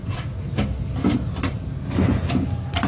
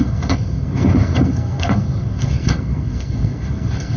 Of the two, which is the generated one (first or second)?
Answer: second